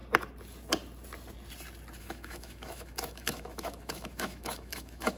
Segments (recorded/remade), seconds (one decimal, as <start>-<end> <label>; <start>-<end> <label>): 0.0-2.0 recorded; 2.0-5.2 remade